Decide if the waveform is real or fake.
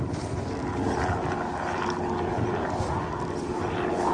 real